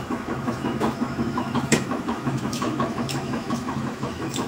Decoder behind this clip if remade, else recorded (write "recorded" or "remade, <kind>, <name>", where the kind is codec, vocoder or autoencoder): remade, autoencoder, DAC-VAE